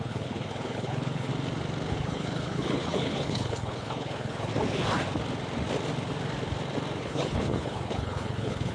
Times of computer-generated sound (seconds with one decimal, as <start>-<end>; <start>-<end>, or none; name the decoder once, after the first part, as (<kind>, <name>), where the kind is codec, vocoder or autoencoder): 0.0-1.3 (codec, HILCodec); 1.9-4.5; 7.0-8.7